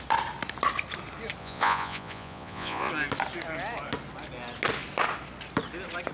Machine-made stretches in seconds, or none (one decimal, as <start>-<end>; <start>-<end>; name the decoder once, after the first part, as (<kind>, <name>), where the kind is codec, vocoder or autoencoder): 1.4-2.9 (vocoder, Vocos)